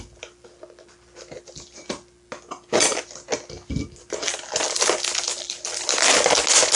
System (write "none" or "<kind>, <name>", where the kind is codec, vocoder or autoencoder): none